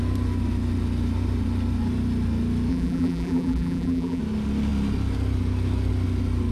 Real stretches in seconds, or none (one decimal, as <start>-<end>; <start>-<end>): 0.0-2.7; 4.2-6.5